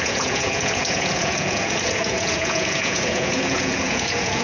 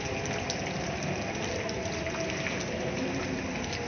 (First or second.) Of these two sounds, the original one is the second